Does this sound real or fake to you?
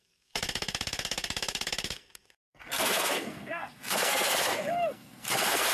fake